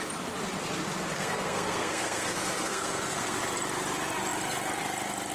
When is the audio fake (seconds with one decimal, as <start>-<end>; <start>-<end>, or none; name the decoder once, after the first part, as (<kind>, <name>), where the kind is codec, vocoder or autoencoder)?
1.2-3.4 (codec, SNAC)